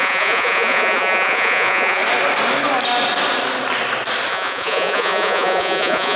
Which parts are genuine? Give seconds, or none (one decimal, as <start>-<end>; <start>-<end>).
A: 2.0-4.3